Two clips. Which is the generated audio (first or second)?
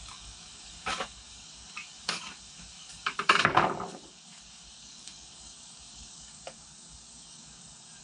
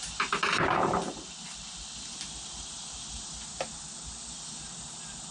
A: first